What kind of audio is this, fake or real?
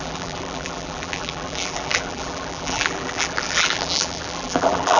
fake